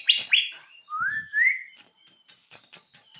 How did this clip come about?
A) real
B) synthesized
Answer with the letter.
B